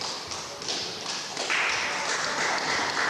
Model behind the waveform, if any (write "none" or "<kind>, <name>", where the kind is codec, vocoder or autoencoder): none